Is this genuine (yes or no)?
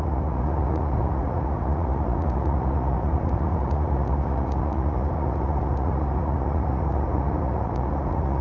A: no